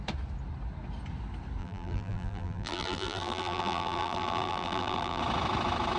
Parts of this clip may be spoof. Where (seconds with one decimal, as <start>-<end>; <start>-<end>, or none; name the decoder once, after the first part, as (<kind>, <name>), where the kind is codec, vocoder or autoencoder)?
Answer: 1.6-5.2 (vocoder, BigVGAN v2)